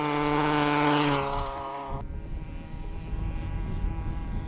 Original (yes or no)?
yes